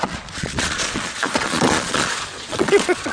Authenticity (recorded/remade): remade